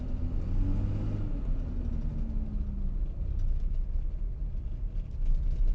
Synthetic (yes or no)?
no